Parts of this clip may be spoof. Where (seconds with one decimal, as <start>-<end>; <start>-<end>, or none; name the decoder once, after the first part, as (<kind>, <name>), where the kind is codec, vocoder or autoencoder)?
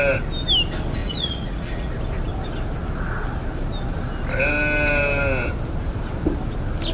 1.0-1.9 (vocoder, Vocos)